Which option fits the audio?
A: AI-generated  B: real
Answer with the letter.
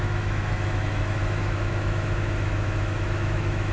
A